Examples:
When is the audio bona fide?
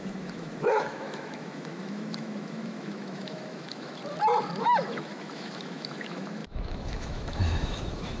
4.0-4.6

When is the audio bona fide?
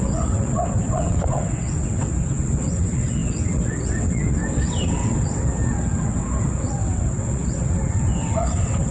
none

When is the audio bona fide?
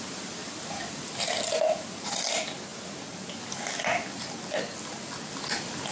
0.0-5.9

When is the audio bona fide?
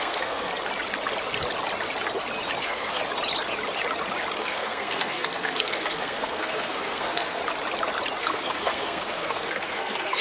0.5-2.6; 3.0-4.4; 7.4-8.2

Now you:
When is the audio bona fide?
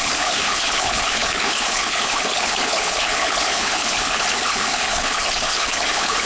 none